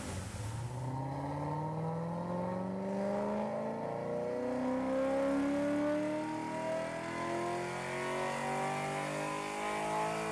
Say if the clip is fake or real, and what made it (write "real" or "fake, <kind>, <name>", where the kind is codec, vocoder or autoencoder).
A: real